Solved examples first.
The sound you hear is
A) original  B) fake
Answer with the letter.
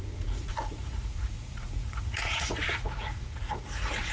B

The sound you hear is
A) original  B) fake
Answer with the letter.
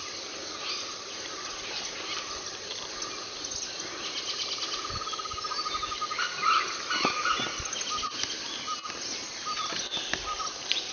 A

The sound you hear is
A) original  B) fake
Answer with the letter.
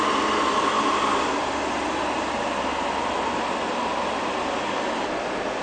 A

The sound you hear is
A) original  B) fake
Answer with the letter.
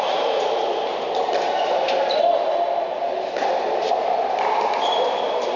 A